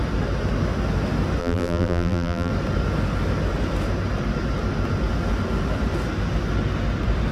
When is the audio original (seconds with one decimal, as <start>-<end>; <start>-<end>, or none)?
0.0-1.4; 2.5-7.3